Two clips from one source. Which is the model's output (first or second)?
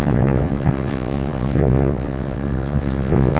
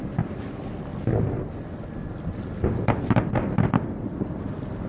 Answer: first